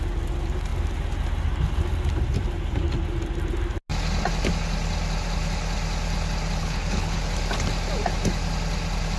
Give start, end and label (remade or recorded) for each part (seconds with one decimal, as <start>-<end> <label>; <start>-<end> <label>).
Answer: 0.0-6.6 recorded; 6.6-7.2 remade; 7.2-9.2 recorded